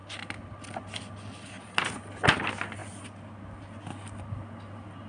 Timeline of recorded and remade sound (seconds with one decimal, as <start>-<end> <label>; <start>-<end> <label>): 0.0-5.1 recorded